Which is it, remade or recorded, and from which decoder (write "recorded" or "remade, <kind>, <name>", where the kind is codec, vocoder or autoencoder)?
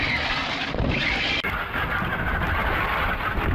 recorded